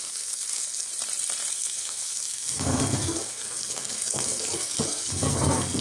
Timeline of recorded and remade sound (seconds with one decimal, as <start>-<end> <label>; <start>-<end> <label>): 0.0-0.9 remade; 0.9-1.5 recorded; 1.5-5.8 remade